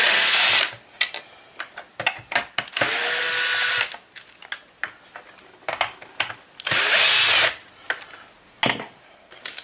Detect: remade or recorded recorded